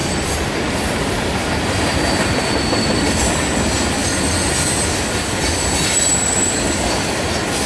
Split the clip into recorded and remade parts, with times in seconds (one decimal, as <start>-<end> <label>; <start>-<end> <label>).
0.0-3.2 remade; 3.2-4.0 recorded; 4.0-6.8 remade; 6.8-7.7 recorded